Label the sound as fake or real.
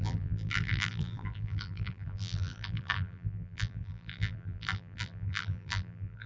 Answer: fake